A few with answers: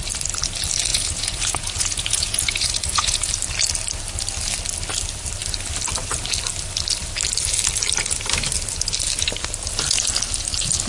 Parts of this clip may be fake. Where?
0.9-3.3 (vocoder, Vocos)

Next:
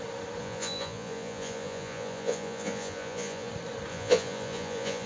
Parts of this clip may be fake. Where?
0.4-3.5 (vocoder, Vocos); 3.9-5.1

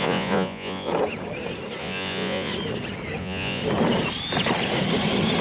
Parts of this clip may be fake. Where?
0.0-0.9 (vocoder, Vocos); 1.8-2.5; 3.2-3.6

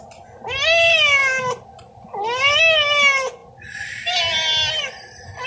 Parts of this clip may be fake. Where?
none

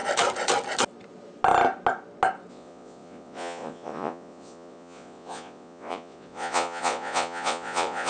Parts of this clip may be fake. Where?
2.5-8.1 (vocoder, Vocos)

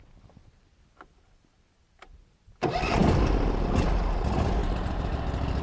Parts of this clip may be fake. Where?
none

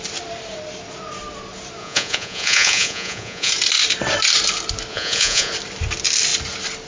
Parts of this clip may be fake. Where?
1.8-3.5 (vocoder, Vocos); 4.9-5.5